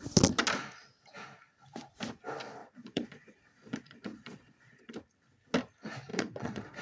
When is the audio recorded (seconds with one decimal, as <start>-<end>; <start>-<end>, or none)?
0.0-2.6; 4.9-6.1